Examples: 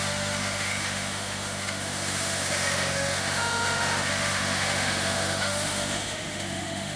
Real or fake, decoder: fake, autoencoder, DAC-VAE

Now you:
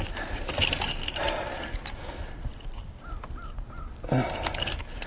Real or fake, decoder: real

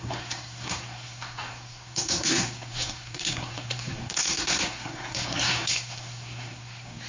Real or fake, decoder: fake, codec, SNAC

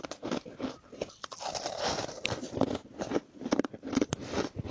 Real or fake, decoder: real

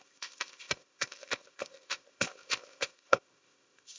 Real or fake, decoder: fake, codec, ZipCodec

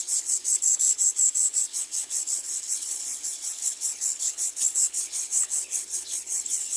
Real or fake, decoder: fake, codec, HILCodec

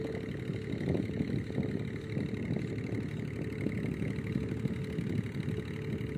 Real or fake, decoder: real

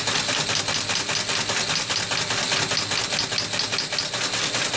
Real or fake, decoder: real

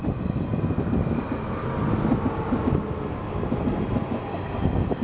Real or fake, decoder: real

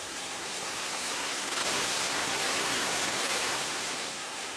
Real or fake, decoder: fake, codec, SNAC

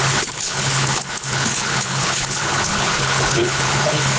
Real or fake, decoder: fake, codec, HILCodec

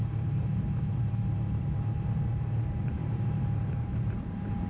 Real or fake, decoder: fake, vocoder, BigVGAN v2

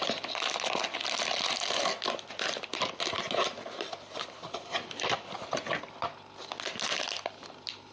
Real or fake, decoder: real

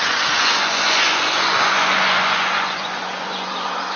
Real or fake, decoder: fake, vocoder, Vocos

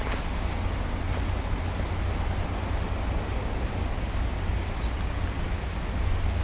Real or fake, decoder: real